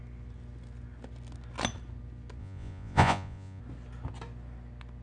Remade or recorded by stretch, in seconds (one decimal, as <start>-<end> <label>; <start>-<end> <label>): 0.0-2.4 recorded; 2.4-3.6 remade; 3.6-5.0 recorded